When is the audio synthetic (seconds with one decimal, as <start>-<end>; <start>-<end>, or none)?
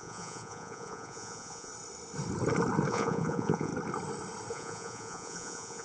0.0-1.7; 2.9-3.7; 4.5-5.8